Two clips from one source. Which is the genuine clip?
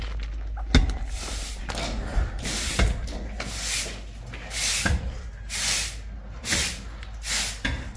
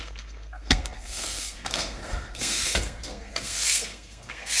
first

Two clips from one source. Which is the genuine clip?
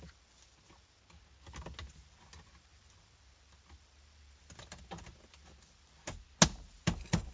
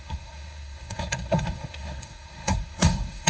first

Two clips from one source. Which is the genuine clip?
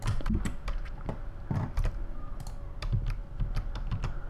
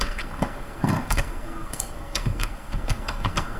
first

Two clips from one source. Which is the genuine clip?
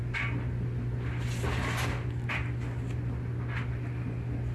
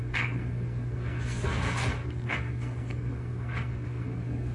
first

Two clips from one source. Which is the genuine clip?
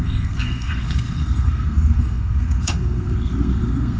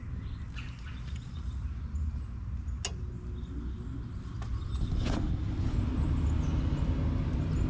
second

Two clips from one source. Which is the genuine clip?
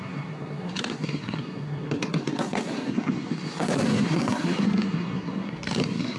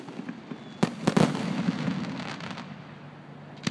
second